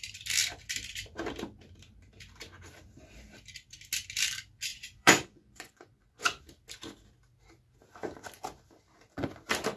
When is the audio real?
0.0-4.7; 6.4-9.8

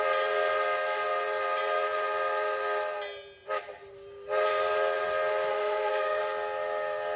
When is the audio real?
0.0-5.5; 6.2-7.2

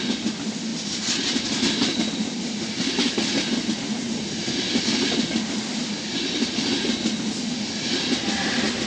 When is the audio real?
0.0-8.9